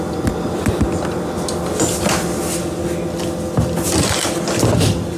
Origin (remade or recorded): recorded